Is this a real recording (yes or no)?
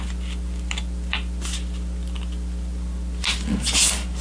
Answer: yes